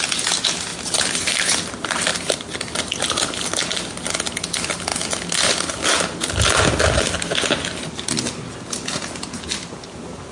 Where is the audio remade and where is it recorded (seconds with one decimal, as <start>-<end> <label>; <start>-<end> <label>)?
0.0-2.1 recorded; 2.1-2.8 remade; 2.8-10.3 recorded